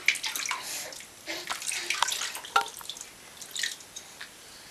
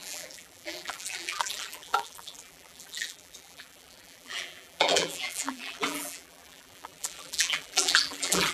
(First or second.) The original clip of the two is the first